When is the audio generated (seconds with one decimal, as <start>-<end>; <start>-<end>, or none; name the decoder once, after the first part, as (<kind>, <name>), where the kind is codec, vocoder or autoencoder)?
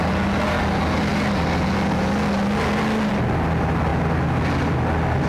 none